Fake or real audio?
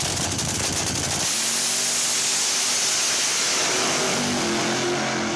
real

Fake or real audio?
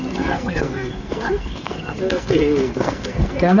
fake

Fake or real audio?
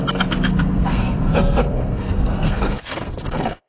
fake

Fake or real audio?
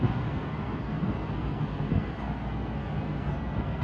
fake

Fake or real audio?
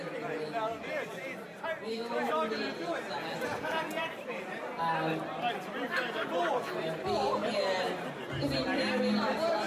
real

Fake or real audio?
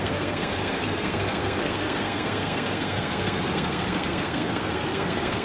fake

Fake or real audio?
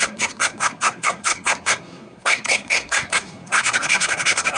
fake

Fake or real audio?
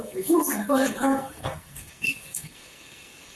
fake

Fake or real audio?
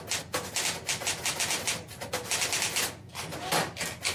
real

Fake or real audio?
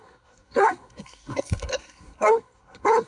fake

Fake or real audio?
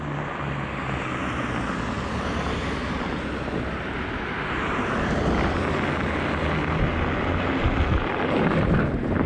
real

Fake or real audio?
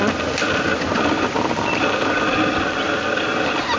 real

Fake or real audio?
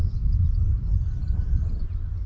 real